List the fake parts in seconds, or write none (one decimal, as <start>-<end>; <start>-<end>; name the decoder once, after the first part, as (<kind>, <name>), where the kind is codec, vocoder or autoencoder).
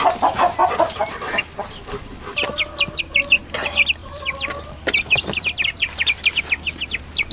0.6-3.0 (vocoder, BigVGAN v2); 4.0-6.4